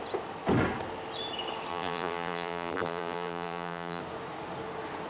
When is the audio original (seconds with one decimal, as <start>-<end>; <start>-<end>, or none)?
0.0-1.7; 4.0-5.1